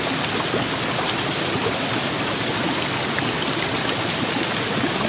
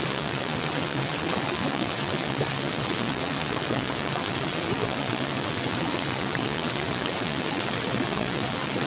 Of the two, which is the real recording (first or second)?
first